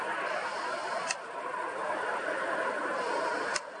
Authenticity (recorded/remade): recorded